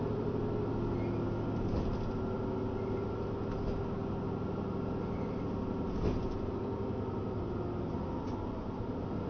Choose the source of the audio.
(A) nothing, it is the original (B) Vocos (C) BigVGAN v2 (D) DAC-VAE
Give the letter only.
A